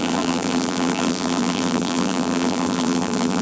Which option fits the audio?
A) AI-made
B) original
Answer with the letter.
A